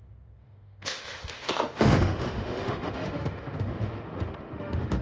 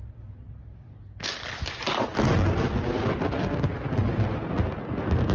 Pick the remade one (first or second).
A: first